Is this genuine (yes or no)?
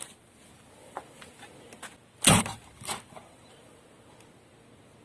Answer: yes